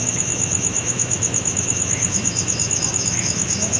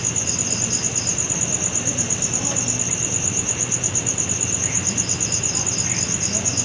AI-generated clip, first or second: first